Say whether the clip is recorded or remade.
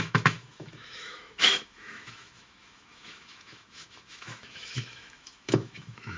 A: remade